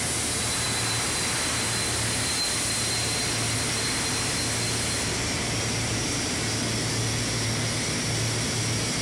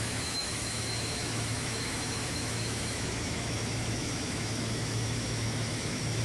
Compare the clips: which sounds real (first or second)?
first